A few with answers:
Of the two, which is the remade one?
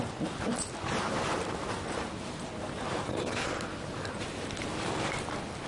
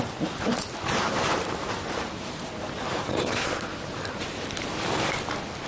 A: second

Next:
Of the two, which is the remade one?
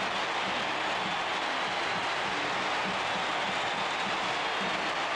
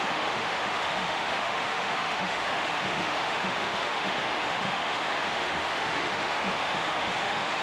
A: second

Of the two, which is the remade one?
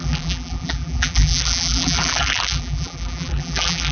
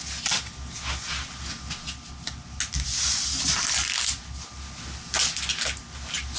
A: first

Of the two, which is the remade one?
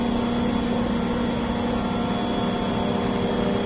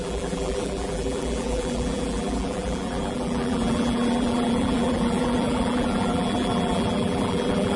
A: second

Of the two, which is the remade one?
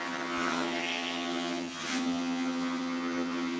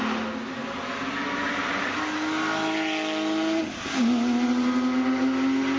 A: first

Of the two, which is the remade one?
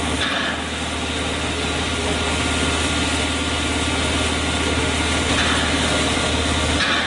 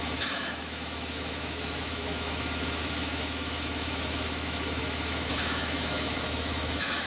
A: second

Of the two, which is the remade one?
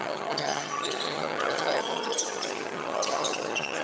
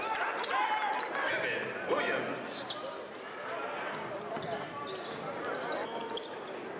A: first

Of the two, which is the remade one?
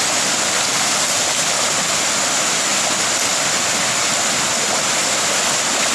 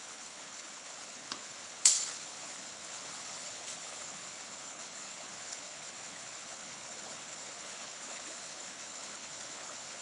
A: second